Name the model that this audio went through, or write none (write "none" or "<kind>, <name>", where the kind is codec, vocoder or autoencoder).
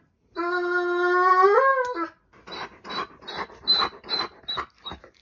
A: none